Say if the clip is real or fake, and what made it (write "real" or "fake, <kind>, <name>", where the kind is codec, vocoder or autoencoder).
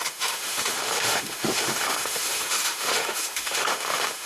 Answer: fake, autoencoder, DAC-VAE